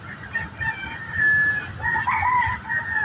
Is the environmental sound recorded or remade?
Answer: recorded